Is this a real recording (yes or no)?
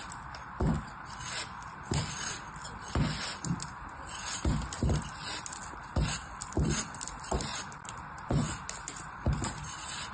yes